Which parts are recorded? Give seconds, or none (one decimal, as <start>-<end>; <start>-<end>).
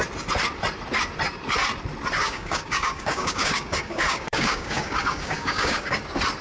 0.0-2.2; 6.0-6.4